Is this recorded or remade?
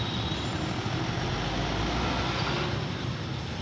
recorded